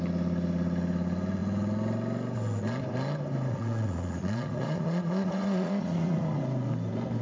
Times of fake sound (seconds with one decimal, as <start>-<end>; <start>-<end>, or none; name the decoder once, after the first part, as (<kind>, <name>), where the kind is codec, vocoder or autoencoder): 3.5-6.4 (vocoder, Vocos)